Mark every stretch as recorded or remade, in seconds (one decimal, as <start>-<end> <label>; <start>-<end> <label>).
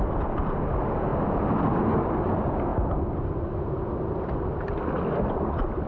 0.0-5.9 recorded